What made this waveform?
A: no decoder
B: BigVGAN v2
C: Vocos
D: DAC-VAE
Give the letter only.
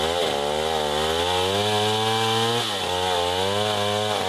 A